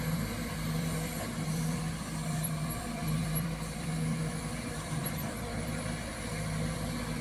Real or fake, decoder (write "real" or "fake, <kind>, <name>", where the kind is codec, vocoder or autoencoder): fake, vocoder, BigVGAN v2